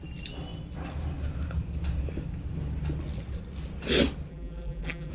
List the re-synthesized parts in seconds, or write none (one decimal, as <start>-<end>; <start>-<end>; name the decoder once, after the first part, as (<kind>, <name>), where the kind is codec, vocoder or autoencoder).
4.3-5.1 (vocoder, BigVGAN v2)